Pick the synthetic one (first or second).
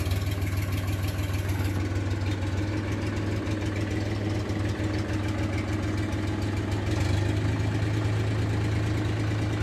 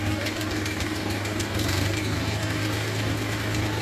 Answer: second